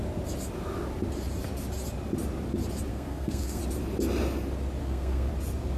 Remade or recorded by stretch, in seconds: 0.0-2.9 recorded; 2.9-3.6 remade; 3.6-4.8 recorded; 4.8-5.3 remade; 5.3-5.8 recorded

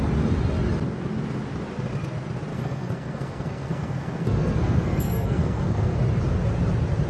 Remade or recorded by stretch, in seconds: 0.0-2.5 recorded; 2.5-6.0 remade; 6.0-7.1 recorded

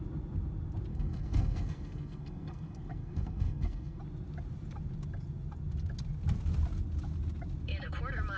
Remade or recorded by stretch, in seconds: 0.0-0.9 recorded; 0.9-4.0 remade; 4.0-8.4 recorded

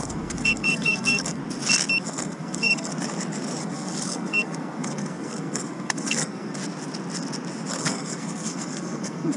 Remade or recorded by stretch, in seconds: 0.0-1.4 remade; 1.4-2.0 recorded; 2.0-2.9 remade; 2.9-3.6 recorded; 3.6-6.6 remade; 6.6-7.8 recorded; 7.8-9.4 remade

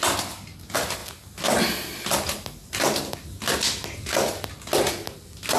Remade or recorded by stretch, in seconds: 0.0-5.6 recorded

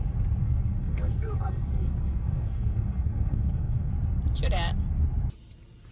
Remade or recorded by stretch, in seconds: 0.0-0.4 recorded; 0.4-3.9 remade; 3.9-5.9 recorded

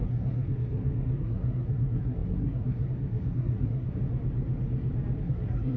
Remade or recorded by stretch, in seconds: 0.0-4.0 remade; 4.0-5.2 recorded; 5.2-5.8 remade